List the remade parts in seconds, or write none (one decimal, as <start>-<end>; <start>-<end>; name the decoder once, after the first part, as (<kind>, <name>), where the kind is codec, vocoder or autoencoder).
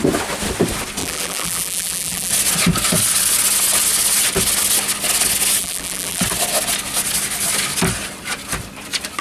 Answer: 1.0-2.3 (vocoder, BigVGAN v2); 5.6-6.2